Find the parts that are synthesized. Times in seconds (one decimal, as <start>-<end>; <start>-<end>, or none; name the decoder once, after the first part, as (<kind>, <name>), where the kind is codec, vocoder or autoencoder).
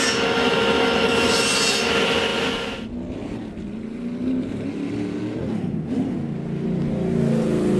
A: none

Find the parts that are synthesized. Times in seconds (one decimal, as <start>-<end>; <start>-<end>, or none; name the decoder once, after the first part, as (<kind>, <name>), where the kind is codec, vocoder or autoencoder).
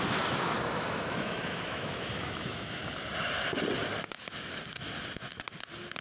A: 0.0-2.8 (autoencoder, DAC-VAE)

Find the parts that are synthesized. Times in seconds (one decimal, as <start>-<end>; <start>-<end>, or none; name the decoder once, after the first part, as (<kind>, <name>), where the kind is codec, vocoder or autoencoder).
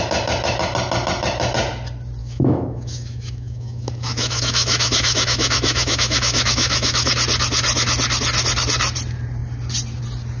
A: 2.2-7.1 (autoencoder, DAC-VAE)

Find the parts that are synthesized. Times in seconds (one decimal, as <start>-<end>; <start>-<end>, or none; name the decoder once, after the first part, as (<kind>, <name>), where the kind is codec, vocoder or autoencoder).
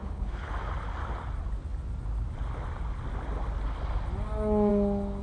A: 0.0-0.5 (codec, HILCodec)